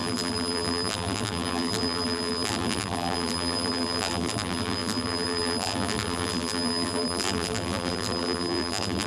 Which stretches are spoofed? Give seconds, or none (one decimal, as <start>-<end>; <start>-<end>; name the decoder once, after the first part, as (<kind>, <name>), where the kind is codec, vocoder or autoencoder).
0.0-9.1 (vocoder, BigVGAN v2)